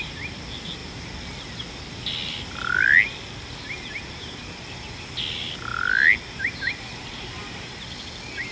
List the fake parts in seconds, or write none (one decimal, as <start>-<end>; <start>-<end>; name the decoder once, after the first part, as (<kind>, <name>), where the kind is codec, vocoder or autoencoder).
none